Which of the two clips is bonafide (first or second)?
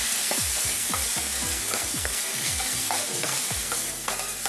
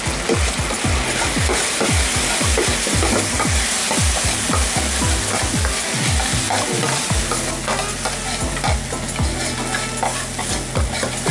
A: second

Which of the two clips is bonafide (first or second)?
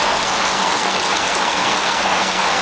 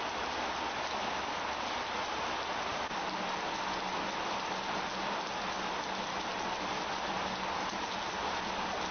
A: second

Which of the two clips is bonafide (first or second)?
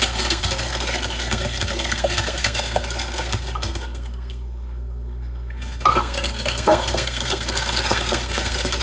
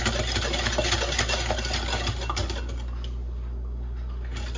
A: second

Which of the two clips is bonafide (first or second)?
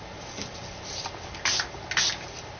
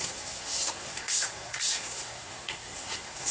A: first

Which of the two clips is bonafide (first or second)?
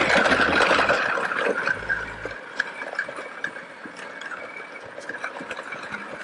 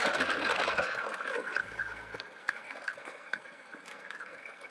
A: first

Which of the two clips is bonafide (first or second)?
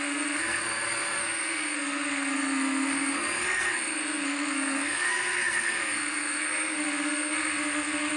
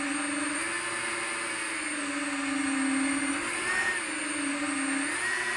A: second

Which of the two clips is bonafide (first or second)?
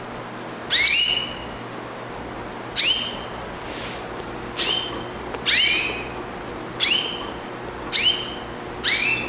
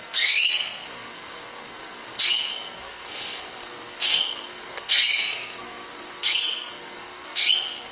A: first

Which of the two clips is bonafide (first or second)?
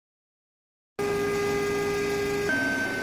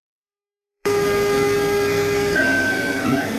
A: first